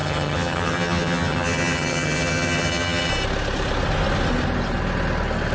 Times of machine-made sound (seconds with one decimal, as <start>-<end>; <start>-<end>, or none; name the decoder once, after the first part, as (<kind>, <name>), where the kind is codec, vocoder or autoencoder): 0.0-3.1 (vocoder, HiFi-GAN)

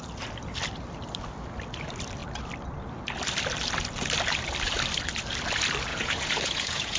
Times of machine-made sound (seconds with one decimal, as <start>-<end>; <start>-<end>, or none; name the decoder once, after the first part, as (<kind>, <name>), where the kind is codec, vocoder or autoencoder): 5.9-7.0 (vocoder, Vocos)